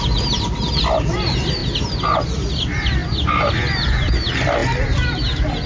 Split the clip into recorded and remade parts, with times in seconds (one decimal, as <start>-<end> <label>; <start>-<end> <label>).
0.0-5.7 recorded